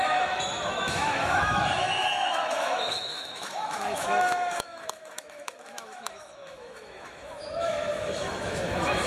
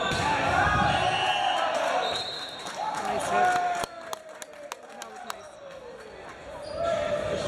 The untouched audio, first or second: second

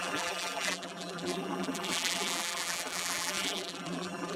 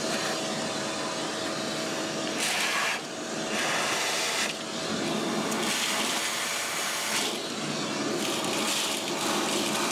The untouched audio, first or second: second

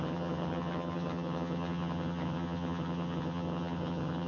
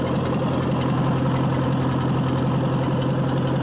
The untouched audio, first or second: second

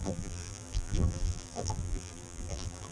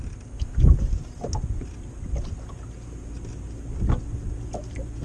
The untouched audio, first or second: second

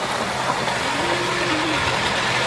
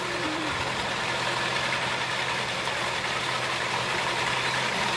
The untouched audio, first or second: first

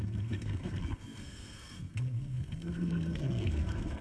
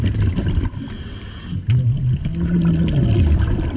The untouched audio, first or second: second